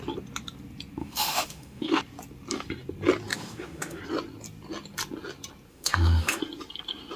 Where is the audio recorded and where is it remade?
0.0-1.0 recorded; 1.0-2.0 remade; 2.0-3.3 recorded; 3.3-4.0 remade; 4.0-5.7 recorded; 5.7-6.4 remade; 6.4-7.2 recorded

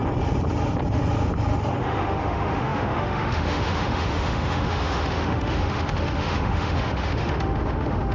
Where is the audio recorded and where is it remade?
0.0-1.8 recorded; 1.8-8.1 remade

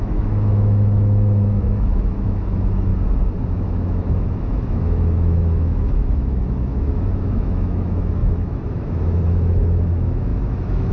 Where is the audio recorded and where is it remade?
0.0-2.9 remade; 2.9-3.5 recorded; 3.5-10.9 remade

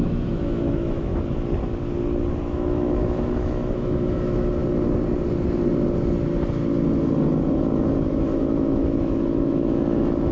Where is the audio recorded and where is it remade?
0.0-1.1 remade; 1.1-2.3 recorded; 2.3-4.6 remade; 4.6-8.1 recorded; 8.1-10.3 remade

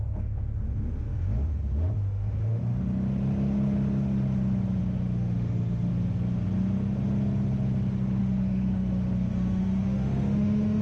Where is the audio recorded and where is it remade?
0.0-2.6 remade; 2.6-4.8 recorded; 4.8-5.9 remade; 5.9-8.2 recorded; 8.2-10.8 remade

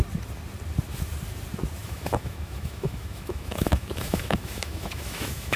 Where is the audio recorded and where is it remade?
0.0-1.8 recorded; 1.8-5.6 remade

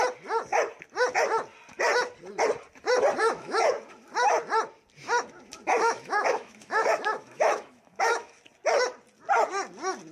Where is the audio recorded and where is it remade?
0.0-3.2 recorded; 3.2-3.7 remade; 3.7-5.7 recorded; 5.7-8.4 remade; 8.4-10.1 recorded

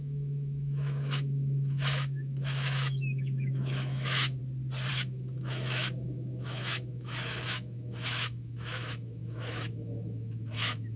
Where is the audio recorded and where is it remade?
0.0-4.4 remade; 4.4-4.9 recorded; 4.9-11.0 remade